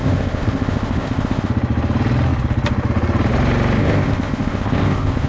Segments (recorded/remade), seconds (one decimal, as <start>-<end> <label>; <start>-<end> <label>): 0.0-1.5 remade; 1.5-3.8 recorded; 3.8-5.3 remade